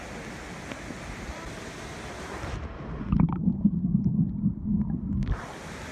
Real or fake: real